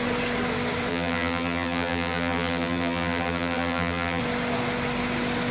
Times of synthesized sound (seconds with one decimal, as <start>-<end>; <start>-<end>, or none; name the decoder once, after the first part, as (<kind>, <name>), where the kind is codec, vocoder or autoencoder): 0.9-4.2 (vocoder, BigVGAN v2)